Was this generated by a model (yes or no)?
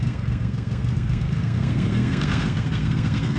yes